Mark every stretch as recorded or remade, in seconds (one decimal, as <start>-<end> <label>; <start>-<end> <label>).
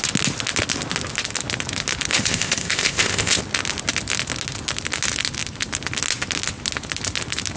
0.0-2.1 recorded; 2.1-3.4 remade; 3.4-7.6 recorded